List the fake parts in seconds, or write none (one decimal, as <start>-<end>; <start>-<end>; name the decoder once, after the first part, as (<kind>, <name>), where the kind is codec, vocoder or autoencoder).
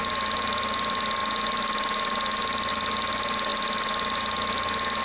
none